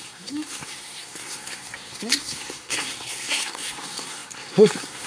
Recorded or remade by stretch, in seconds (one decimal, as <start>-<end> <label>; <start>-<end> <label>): 0.0-5.1 remade